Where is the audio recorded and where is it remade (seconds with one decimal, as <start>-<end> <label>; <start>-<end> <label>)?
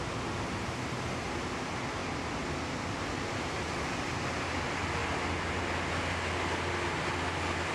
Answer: 0.0-7.7 recorded